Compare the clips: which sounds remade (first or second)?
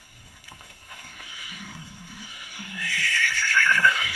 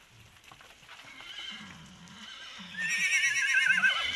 first